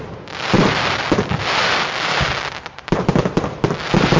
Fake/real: real